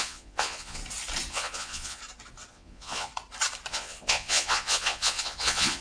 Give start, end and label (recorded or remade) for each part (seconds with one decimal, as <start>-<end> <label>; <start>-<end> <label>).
0.0-0.8 remade; 0.8-1.3 recorded; 1.3-2.0 remade; 2.0-2.5 recorded; 2.5-3.1 remade; 3.1-3.7 recorded; 3.7-5.8 remade